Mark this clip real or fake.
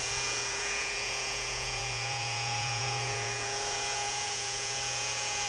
fake